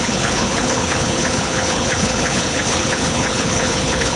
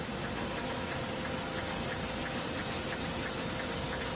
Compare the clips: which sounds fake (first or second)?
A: first